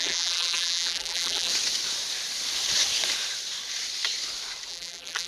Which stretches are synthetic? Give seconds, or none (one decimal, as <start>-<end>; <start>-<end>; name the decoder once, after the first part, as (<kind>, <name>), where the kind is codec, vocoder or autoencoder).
0.0-1.5 (vocoder, BigVGAN v2); 4.7-5.3